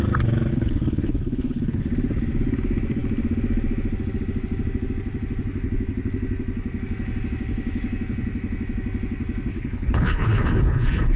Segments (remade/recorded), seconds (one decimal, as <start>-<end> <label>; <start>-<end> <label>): 0.0-0.5 recorded; 0.5-1.8 remade; 1.8-9.5 recorded; 9.5-11.2 remade